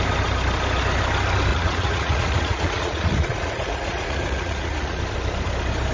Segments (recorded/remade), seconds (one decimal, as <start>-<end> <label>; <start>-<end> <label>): 0.0-1.5 recorded; 1.5-5.0 remade; 5.0-5.9 recorded